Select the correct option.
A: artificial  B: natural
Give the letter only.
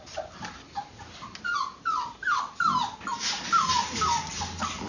B